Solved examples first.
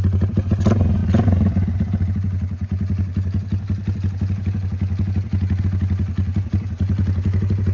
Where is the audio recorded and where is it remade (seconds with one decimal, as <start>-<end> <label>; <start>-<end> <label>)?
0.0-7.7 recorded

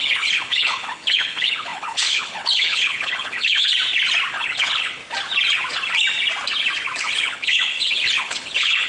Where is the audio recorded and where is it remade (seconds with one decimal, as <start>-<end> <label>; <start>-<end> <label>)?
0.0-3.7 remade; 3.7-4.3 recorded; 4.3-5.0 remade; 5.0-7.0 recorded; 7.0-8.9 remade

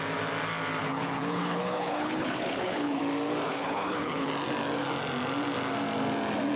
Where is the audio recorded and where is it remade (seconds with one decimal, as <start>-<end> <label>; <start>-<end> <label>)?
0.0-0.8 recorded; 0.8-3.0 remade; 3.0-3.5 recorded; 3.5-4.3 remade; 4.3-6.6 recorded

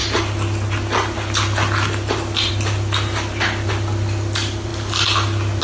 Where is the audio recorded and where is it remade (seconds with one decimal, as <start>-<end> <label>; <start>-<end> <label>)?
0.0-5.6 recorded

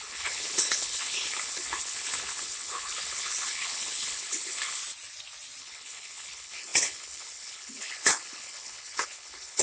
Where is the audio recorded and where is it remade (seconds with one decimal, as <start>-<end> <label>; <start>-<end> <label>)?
0.0-4.8 remade; 4.8-5.6 recorded; 5.6-9.6 remade

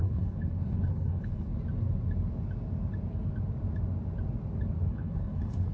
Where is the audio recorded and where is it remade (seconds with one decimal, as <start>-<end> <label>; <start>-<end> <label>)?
0.0-1.5 remade; 1.5-4.9 recorded; 4.9-5.7 remade

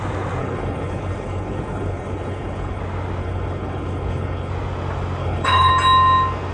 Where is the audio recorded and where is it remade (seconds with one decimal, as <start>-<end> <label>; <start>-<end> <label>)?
0.0-0.4 recorded; 0.4-2.8 remade; 2.8-3.2 recorded; 3.2-4.5 remade; 4.5-5.2 recorded; 5.2-5.7 remade; 5.7-6.5 recorded

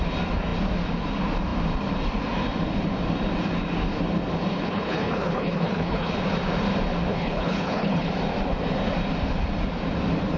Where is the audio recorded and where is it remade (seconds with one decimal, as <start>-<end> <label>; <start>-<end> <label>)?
0.0-4.5 recorded; 4.5-6.1 remade; 6.1-7.1 recorded; 7.1-8.1 remade; 8.1-10.4 recorded